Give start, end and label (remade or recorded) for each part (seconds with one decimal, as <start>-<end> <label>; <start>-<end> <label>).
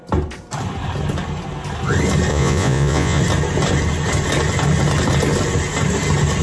0.0-2.3 recorded; 2.3-3.2 remade; 3.2-6.4 recorded